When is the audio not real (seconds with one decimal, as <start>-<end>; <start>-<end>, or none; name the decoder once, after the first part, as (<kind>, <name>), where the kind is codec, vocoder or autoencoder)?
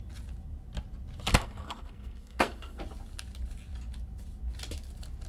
1.3-2.8 (codec, SNAC)